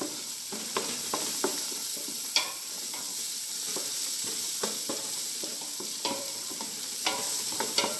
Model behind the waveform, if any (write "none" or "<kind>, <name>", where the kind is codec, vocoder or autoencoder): vocoder, BigVGAN v2